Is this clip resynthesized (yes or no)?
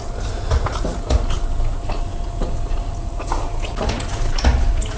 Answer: no